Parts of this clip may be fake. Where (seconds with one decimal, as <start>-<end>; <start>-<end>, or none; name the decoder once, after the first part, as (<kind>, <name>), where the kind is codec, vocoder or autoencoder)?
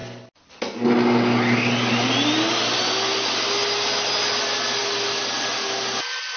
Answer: none